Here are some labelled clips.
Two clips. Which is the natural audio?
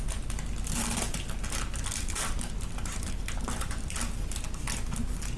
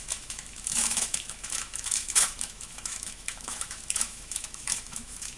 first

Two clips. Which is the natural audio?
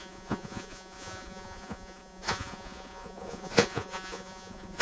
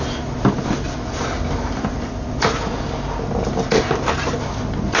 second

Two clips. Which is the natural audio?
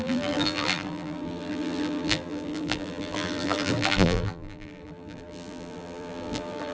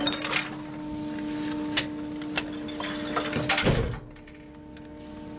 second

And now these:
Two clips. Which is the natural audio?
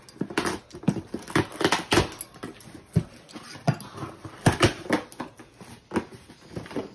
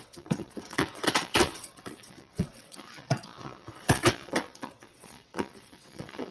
first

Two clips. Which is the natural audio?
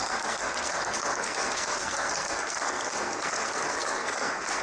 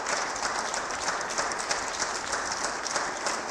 second